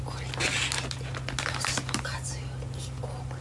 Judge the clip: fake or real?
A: real